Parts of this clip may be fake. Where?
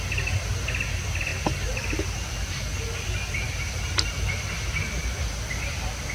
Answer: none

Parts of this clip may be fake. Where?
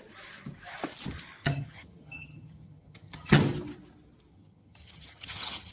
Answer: 1.4-3.4; 4.3-5.7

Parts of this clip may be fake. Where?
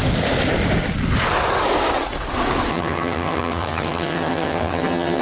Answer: 2.7-5.2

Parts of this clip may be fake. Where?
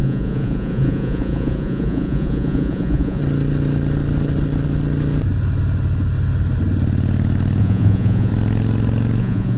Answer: 0.0-3.2; 7.6-8.3; 9.2-9.6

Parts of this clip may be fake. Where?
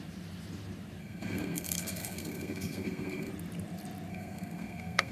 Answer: 1.0-3.3; 4.1-5.1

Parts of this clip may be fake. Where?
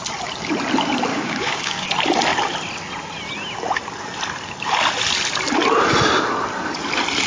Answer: 1.1-1.9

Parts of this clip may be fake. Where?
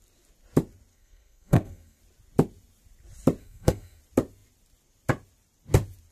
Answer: 0.9-2.0; 3.4-4.0